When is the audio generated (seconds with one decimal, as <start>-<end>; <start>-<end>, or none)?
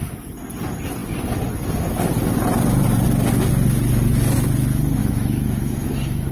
5.0-6.3